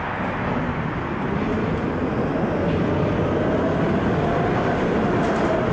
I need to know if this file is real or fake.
real